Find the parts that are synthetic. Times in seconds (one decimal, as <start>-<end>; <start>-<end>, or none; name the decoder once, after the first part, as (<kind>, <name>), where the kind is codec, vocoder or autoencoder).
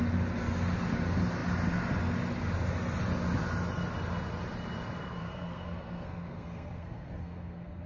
5.2-7.9 (codec, SNAC)